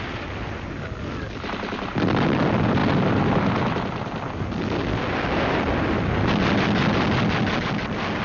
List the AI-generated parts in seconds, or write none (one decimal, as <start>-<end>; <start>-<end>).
none